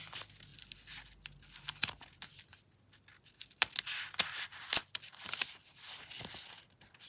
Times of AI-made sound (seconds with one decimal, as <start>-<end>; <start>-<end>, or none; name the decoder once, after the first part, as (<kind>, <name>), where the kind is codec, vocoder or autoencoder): none